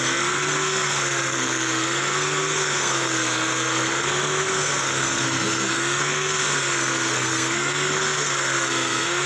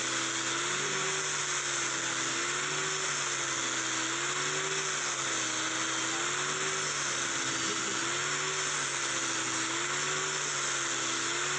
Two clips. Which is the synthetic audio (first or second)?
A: first